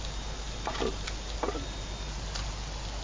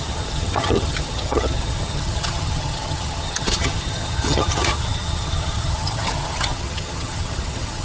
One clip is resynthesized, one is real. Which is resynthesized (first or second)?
second